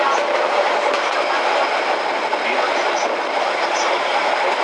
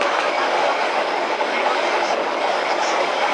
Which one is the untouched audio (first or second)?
first